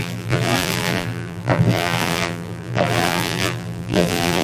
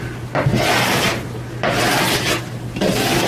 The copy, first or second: first